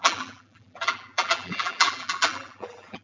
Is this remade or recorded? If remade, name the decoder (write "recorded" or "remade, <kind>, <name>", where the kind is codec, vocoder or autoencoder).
remade, vocoder, BigVGAN v2